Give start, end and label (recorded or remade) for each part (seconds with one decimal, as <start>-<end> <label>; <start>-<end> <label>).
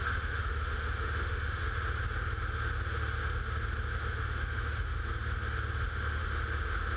0.0-1.6 remade; 1.6-4.0 recorded; 4.0-5.0 remade; 5.0-5.8 recorded; 5.8-6.2 remade; 6.2-7.0 recorded